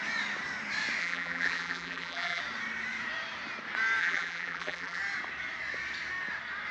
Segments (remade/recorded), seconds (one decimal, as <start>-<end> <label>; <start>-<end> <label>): 0.0-1.0 recorded; 1.0-2.4 remade; 2.4-4.0 recorded; 4.0-5.0 remade; 5.0-6.7 recorded